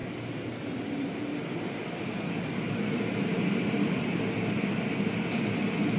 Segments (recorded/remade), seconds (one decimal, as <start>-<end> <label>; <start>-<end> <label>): 0.0-6.0 recorded